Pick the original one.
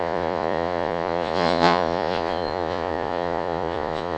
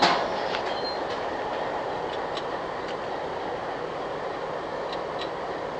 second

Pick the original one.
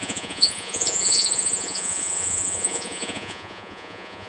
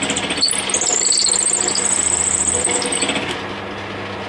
second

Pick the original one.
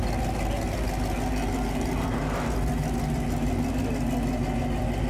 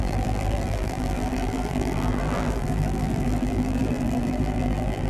first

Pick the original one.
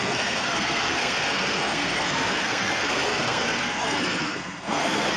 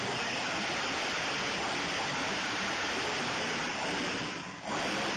second